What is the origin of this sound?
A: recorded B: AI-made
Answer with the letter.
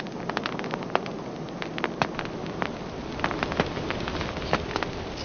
A